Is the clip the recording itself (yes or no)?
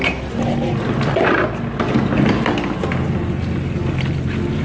yes